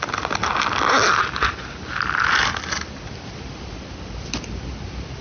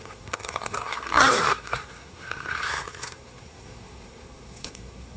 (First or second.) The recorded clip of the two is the first